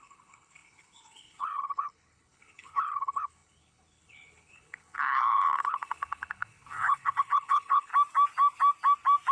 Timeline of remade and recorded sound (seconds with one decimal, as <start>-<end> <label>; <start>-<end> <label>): 0.0-7.9 remade; 7.9-9.3 recorded